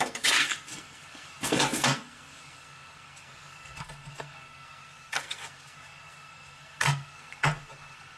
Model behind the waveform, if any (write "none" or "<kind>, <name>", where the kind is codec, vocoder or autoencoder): codec, SNAC